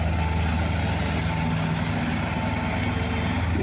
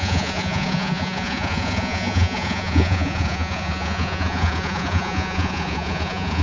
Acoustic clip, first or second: first